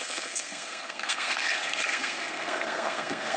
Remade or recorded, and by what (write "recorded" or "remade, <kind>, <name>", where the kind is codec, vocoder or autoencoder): remade, codec, SNAC